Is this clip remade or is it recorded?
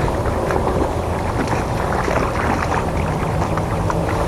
recorded